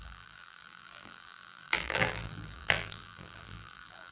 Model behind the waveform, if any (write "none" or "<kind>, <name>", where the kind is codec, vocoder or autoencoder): vocoder, BigVGAN v2